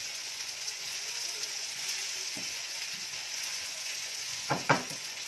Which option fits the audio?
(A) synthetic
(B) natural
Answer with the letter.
A